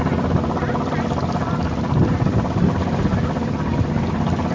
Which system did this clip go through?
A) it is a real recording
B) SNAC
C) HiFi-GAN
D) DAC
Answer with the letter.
A